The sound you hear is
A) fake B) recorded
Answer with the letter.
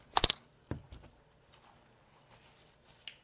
B